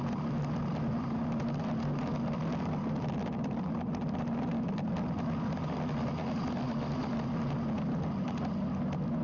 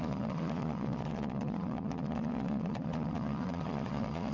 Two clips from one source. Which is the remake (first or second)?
second